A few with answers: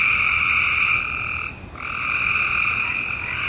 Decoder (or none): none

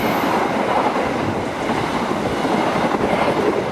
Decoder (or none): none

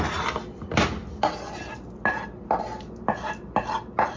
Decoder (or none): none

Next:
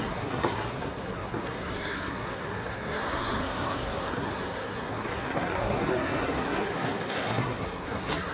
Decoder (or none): codec, SNAC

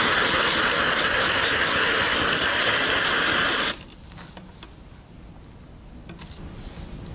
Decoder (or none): none